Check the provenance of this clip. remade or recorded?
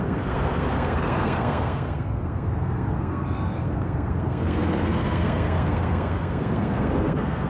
remade